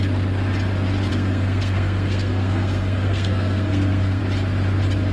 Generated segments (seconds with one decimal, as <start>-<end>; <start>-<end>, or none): 1.1-4.2